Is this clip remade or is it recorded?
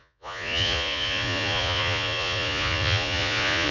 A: remade